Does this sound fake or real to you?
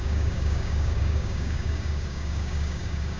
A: fake